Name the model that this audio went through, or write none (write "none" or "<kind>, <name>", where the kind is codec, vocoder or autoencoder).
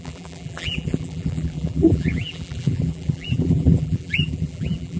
vocoder, BigVGAN v2